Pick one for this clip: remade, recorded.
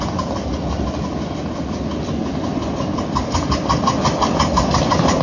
recorded